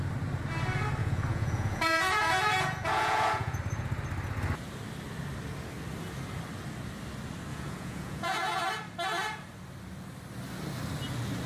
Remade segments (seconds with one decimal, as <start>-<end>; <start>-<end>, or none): 1.0-3.6; 7.5-8.6